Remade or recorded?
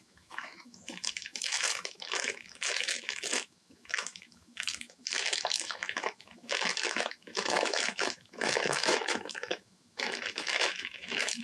remade